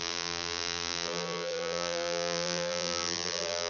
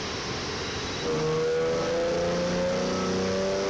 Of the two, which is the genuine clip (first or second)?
second